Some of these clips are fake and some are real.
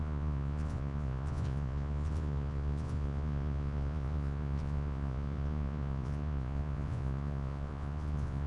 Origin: fake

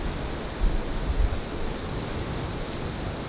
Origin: real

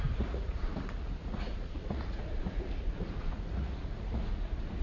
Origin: fake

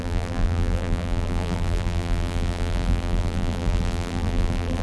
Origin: fake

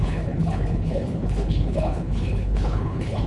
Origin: fake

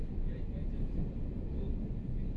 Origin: real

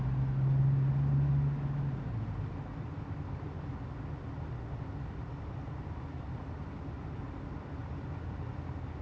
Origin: real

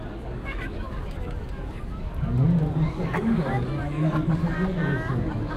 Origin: fake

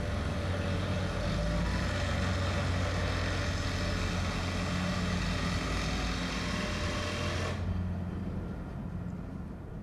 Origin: real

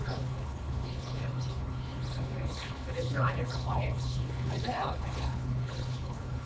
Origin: fake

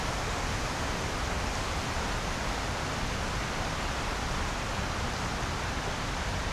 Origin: real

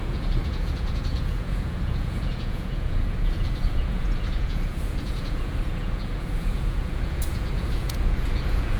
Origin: fake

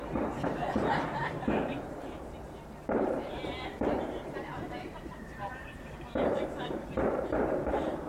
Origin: fake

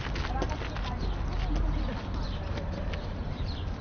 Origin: real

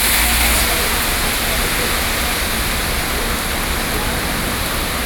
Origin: real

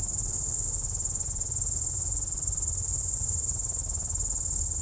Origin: real